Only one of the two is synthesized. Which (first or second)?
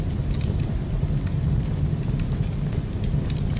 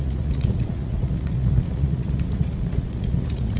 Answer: second